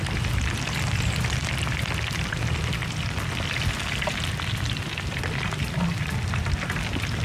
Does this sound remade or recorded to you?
recorded